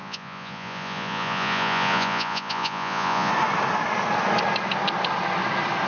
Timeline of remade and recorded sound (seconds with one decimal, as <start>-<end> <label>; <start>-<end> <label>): 0.0-3.3 remade; 3.3-5.9 recorded